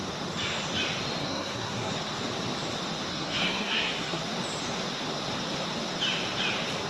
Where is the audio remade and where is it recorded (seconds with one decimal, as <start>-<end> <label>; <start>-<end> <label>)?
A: 0.0-1.2 recorded; 1.2-1.9 remade; 1.9-3.1 recorded; 3.1-4.2 remade; 4.2-6.9 recorded